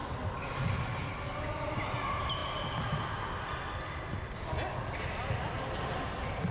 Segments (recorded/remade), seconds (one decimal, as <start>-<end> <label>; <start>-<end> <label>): 0.0-6.5 recorded